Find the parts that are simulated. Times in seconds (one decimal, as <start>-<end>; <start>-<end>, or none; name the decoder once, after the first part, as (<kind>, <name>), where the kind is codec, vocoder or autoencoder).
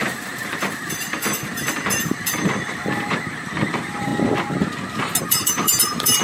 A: 0.0-4.1 (vocoder, BigVGAN v2); 5.2-6.2